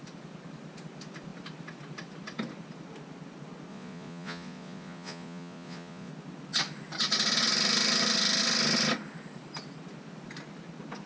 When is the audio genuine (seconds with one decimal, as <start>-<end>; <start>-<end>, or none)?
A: 0.0-3.7; 6.1-11.1